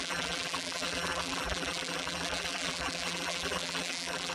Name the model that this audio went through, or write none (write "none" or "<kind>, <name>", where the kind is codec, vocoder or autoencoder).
vocoder, BigVGAN v2